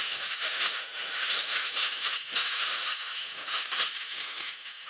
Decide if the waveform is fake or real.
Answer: fake